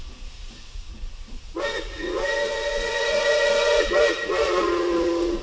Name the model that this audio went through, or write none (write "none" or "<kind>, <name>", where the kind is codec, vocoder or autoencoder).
vocoder, Vocos